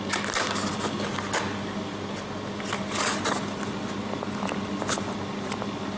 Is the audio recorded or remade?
recorded